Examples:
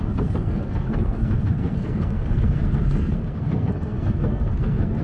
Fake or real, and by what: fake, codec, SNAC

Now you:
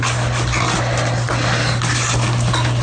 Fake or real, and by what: real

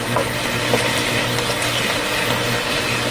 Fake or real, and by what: real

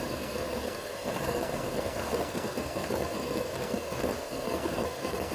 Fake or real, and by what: fake, codec, SNAC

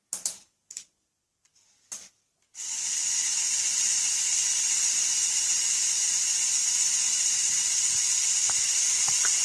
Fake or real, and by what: real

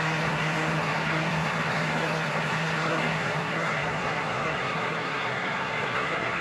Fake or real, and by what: fake, codec, SNAC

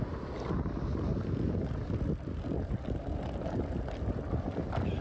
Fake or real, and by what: real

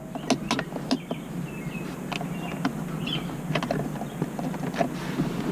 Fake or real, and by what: real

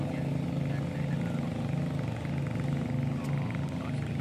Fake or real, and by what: real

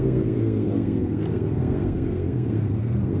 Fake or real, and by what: fake, codec, SNAC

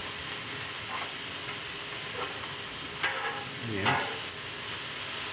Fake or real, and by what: real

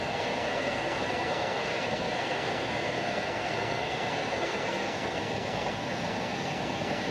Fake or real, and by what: fake, codec, SNAC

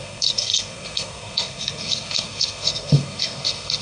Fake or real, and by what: fake, codec, SNAC